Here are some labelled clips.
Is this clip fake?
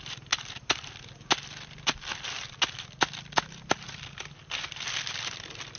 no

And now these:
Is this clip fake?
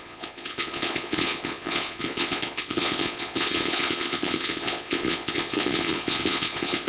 yes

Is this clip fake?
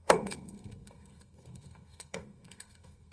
yes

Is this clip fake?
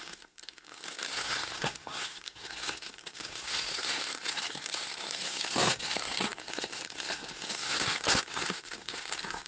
yes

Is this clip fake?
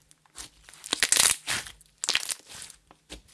no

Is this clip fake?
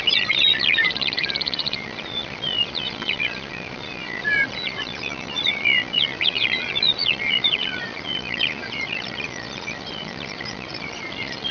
yes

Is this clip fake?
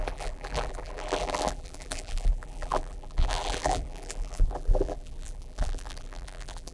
yes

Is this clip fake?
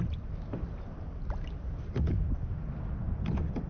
no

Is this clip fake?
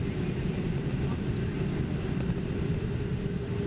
no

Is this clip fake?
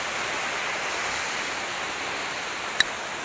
no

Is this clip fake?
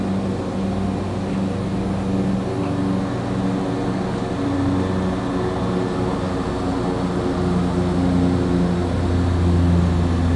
no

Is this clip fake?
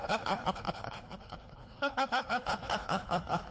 yes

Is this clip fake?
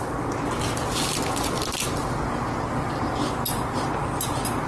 no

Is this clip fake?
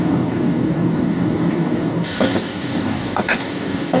yes